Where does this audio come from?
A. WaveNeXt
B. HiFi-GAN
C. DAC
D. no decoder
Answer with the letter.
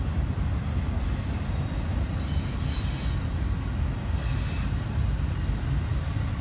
D